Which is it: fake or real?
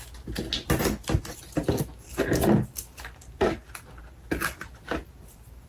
real